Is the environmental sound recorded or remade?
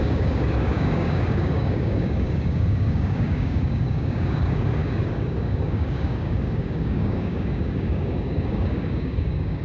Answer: remade